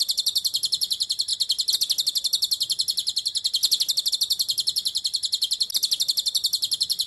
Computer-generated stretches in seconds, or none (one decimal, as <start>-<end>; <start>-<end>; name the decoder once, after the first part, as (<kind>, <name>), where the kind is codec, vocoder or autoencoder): 0.0-1.3 (vocoder, BigVGAN v2); 4.1-7.1